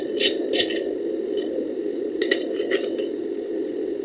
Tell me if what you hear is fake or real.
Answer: real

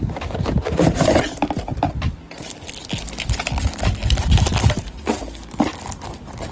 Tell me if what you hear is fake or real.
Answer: real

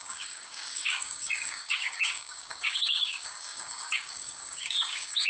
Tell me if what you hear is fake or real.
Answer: fake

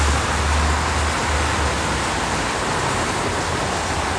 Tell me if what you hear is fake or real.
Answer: real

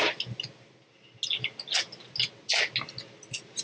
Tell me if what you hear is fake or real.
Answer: real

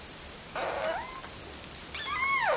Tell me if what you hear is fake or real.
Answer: real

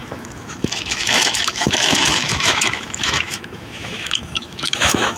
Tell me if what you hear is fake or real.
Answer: fake